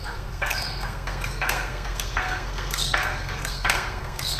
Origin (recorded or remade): remade